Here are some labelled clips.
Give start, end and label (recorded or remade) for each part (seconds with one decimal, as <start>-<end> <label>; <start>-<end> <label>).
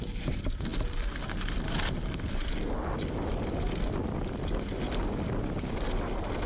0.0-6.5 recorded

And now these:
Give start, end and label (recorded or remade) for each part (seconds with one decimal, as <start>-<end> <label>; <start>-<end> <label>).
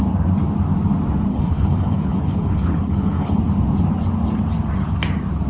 0.0-1.3 recorded; 1.3-3.4 remade; 3.4-5.5 recorded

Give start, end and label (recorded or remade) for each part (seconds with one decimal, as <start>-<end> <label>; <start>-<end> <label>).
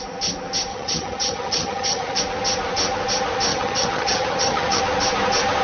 0.0-0.7 recorded; 0.7-2.2 remade; 2.2-3.5 recorded; 3.5-4.8 remade; 4.8-5.6 recorded